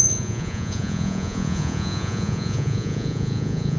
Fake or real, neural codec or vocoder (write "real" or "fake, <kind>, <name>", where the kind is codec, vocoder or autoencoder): fake, vocoder, Vocos